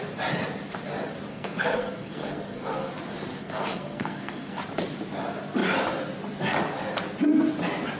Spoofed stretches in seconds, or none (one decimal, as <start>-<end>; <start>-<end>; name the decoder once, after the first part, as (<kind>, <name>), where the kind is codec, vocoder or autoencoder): 1.3-2.9 (codec, SNAC); 3.4-4.6